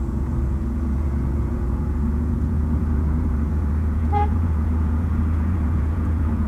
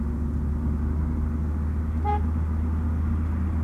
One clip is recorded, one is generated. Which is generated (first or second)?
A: first